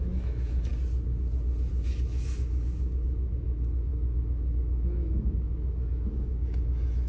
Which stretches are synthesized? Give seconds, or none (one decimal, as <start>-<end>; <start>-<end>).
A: 0.0-0.7; 1.7-7.1